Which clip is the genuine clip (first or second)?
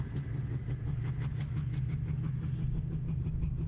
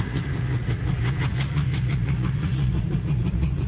first